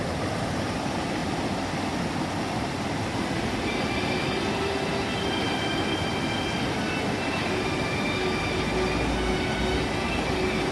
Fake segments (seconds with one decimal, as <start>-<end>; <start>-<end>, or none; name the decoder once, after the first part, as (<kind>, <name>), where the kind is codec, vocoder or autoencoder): none